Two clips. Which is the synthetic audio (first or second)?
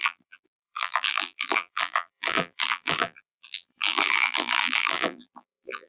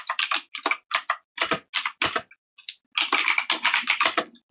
first